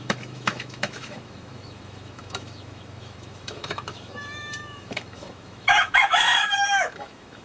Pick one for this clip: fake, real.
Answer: fake